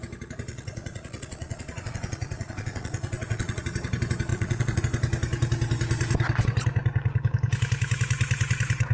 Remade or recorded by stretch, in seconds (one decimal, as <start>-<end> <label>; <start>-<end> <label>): 0.0-0.5 recorded; 0.5-3.6 remade; 3.6-4.3 recorded; 4.3-4.8 remade; 4.8-8.9 recorded